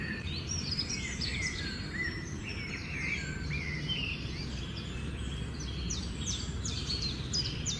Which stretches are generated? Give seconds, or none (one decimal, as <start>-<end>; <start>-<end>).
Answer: 0.0-7.8